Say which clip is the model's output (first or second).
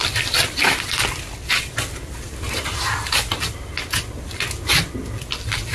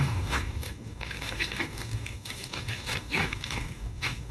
second